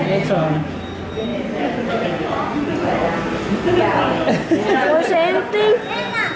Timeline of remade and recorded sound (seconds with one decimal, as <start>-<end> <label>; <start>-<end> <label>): 0.0-6.4 recorded